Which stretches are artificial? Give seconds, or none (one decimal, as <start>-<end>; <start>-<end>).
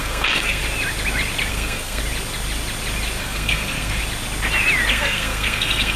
0.0-0.6; 1.5-2.0; 3.2-4.0; 4.9-6.0